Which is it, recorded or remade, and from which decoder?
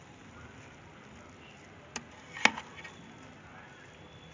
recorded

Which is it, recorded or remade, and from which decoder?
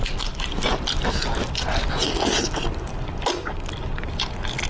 recorded